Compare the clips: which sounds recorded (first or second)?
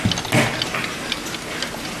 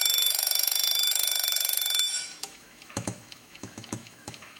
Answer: first